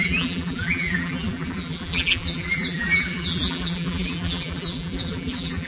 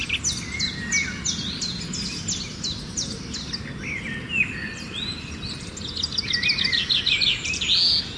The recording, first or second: second